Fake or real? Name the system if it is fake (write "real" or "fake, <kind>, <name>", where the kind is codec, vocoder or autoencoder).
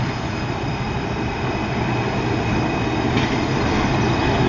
real